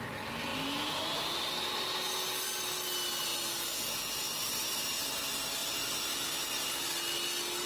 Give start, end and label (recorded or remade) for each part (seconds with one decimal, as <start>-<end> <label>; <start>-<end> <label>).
0.0-7.7 recorded